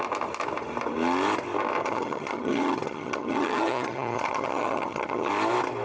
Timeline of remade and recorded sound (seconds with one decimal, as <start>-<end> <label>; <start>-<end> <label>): 0.0-1.8 recorded; 1.8-5.3 remade; 5.3-5.8 recorded